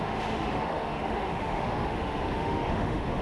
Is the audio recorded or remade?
remade